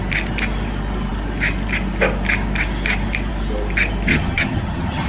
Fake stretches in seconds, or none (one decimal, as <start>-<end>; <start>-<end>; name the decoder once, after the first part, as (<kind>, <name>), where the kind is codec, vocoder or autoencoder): 4.1-5.1 (vocoder, HiFi-GAN)